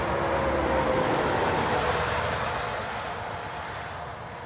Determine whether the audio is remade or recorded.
recorded